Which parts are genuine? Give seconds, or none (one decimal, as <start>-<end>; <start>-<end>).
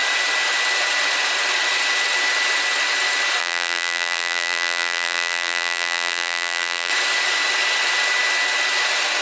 0.0-3.4; 6.9-9.2